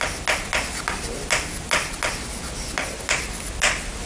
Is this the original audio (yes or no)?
yes